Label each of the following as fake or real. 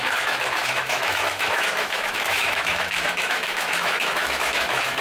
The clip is fake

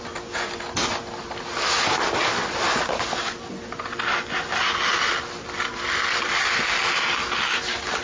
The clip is real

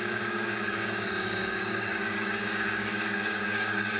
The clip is fake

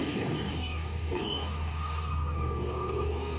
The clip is fake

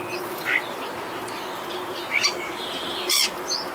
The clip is real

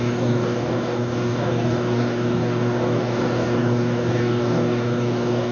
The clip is fake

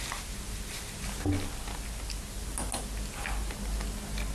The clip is real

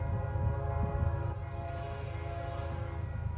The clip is real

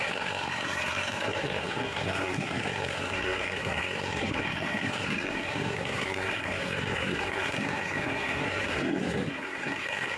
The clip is fake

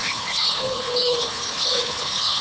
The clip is fake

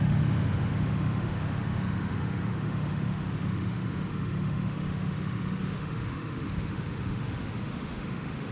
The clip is fake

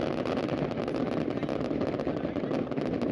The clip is real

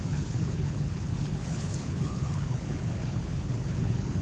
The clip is fake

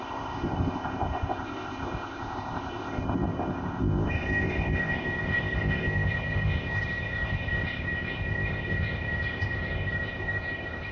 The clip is fake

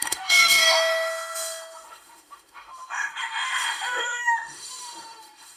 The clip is fake